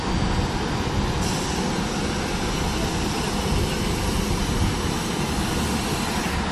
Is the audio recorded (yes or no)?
yes